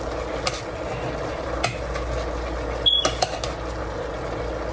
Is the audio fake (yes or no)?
no